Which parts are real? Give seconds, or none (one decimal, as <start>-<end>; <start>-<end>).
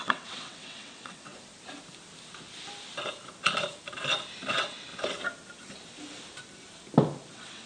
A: 1.3-4.5; 4.9-7.3